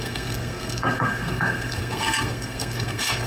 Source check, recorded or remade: remade